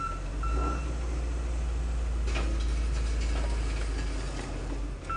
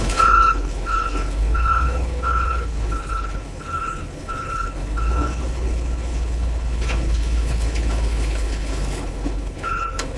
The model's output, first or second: second